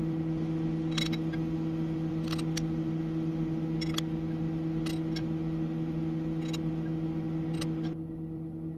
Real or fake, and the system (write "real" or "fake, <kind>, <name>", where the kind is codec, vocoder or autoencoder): real